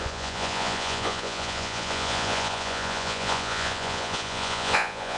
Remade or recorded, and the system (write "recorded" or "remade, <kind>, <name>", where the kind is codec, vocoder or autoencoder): remade, vocoder, Vocos